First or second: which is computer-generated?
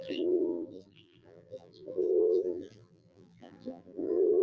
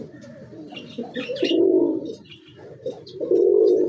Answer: first